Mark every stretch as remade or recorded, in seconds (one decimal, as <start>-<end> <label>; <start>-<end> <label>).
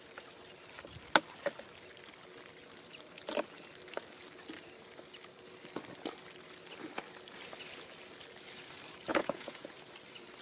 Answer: 0.0-9.1 recorded; 9.1-9.7 remade; 9.7-10.4 recorded